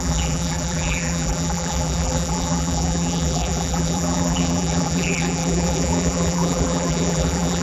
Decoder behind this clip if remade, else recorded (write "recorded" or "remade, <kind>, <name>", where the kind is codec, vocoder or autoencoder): remade, vocoder, BigVGAN v2